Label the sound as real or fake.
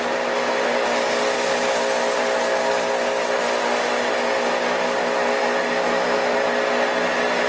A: real